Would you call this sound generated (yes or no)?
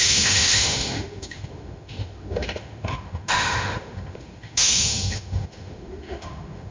yes